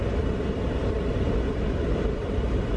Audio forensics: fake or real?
fake